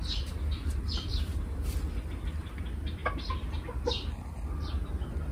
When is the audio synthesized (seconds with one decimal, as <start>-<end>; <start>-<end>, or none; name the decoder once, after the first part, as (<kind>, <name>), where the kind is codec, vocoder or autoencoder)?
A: 1.1-1.7 (vocoder, BigVGAN v2)